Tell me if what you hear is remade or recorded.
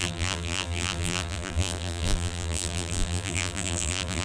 remade